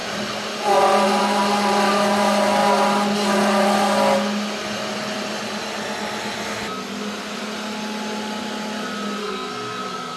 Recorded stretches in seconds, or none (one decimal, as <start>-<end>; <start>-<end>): 0.0-9.2